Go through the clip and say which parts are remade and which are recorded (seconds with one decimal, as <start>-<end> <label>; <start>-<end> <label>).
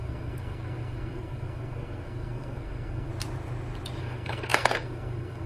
0.0-3.1 remade; 3.1-4.0 recorded; 4.0-5.5 remade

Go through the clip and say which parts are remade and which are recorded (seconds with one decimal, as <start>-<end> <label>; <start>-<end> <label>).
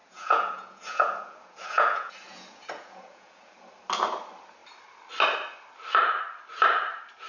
0.0-3.7 remade; 3.7-7.3 recorded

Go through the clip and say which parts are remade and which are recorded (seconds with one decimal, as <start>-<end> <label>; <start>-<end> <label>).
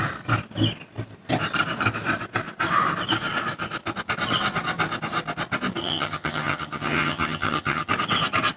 0.0-5.8 recorded; 5.8-7.9 remade; 7.9-8.6 recorded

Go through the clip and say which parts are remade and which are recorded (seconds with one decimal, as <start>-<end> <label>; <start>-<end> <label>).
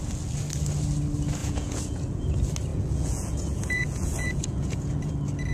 0.0-1.4 recorded; 1.4-2.2 remade; 2.2-2.7 recorded; 2.7-5.1 remade; 5.1-5.5 recorded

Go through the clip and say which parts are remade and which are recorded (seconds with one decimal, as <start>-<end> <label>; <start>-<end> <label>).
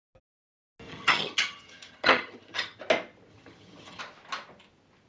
0.0-0.9 recorded; 0.9-2.8 remade; 2.8-3.3 recorded; 3.3-4.0 remade; 4.0-5.1 recorded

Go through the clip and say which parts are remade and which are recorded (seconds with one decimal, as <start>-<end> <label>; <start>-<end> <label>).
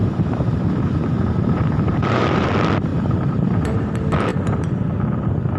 0.0-2.5 remade; 2.5-2.9 recorded; 2.9-3.9 remade; 3.9-5.6 recorded